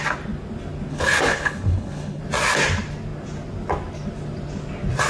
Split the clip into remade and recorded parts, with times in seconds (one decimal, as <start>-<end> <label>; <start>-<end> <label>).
0.0-0.9 recorded; 0.9-2.2 remade; 2.2-5.1 recorded